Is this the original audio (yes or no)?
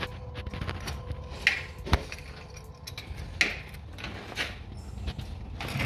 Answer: yes